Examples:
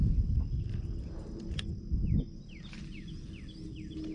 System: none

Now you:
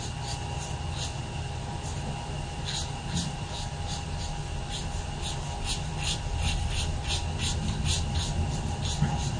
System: none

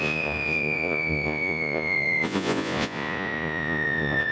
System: vocoder, Vocos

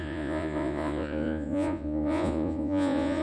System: vocoder, Vocos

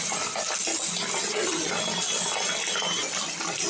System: none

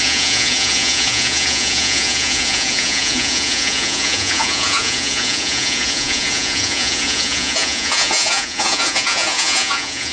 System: vocoder, Vocos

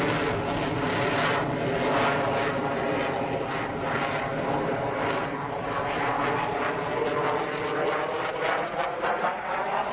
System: none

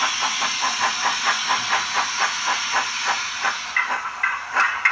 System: none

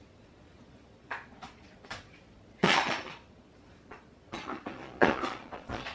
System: vocoder, Vocos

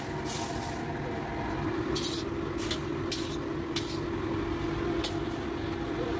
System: none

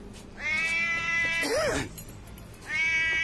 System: none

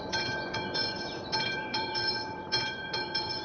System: vocoder, Vocos